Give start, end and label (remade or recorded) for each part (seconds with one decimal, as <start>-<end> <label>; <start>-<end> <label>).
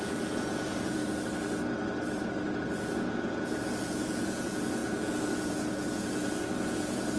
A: 0.0-1.0 remade; 1.0-2.6 recorded; 2.6-7.2 remade